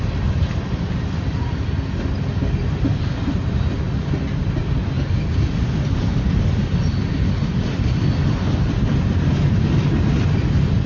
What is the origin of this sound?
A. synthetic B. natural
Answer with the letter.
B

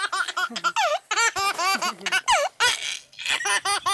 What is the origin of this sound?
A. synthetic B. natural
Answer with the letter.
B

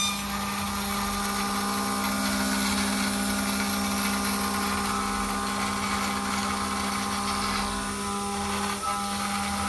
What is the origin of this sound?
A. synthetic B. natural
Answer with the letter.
B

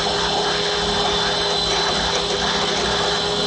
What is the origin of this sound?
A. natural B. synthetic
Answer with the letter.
A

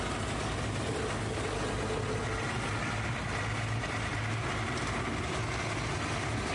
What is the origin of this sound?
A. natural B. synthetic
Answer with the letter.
A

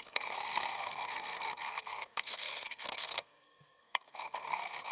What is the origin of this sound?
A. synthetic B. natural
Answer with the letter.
A